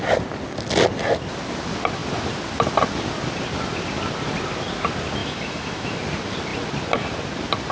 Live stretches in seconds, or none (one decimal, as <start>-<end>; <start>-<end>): 0.0-5.2; 6.0-7.7